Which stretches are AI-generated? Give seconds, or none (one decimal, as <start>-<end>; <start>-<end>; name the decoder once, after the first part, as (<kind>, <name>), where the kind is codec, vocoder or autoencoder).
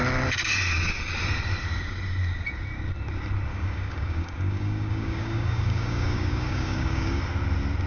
3.5-7.2 (codec, DAC)